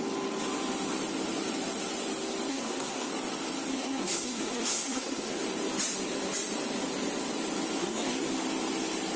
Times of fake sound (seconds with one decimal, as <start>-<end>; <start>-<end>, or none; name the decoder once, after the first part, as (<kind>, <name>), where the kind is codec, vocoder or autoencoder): 2.5-3.1 (codec, SNAC); 3.7-5.4; 7.8-8.3